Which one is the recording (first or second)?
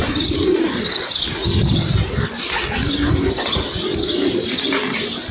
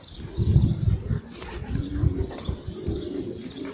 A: first